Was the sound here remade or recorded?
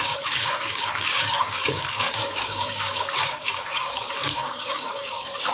remade